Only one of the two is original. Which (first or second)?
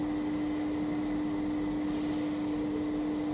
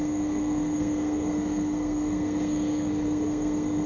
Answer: first